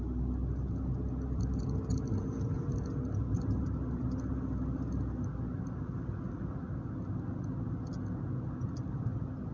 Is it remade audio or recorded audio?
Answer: recorded